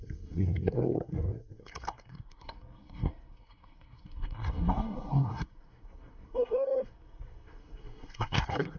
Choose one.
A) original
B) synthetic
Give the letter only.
B